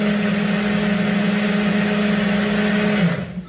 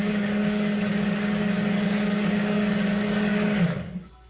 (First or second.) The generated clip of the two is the second